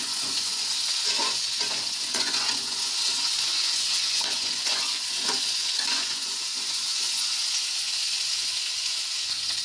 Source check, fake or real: fake